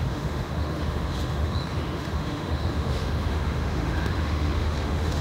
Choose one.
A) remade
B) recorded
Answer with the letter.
A